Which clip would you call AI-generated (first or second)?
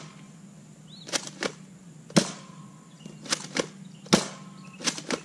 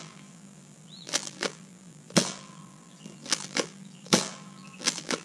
second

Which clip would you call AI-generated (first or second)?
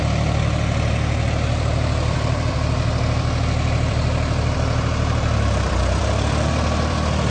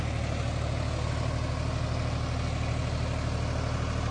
first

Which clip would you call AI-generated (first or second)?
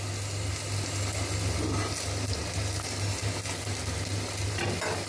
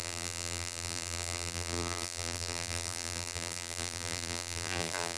second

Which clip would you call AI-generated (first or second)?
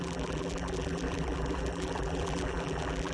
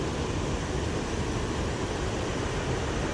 first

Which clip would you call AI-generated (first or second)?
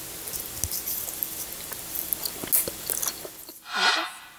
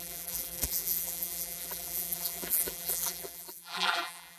second